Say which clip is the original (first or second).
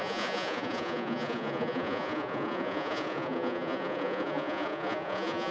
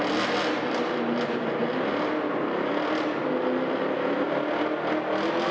second